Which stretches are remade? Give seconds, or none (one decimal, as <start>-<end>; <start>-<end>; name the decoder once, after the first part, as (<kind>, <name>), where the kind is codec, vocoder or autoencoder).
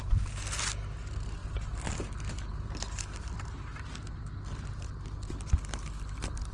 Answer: none